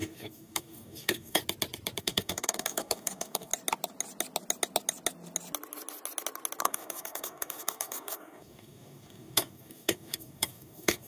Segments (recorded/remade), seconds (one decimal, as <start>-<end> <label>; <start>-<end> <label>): 0.0-1.4 remade; 1.4-2.0 recorded; 2.0-3.5 remade; 3.5-6.6 recorded; 6.6-11.1 remade

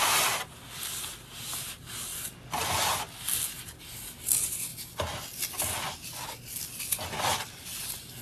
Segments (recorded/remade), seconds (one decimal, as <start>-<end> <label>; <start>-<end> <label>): 0.0-8.2 recorded